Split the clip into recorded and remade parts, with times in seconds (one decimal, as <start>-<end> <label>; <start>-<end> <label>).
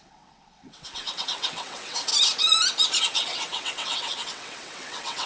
0.0-2.1 remade; 2.1-3.0 recorded; 3.0-5.3 remade